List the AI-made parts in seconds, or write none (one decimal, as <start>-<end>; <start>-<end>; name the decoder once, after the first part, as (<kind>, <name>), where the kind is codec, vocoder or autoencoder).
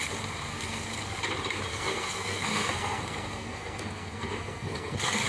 0.5-1.2 (codec, SNAC); 1.7-5.3